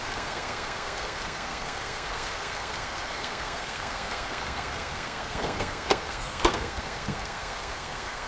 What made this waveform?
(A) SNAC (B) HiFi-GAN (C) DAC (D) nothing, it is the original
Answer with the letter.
A